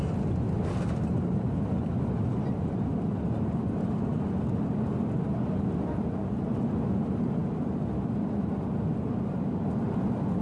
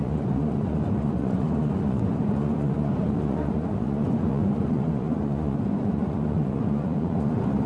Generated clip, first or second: second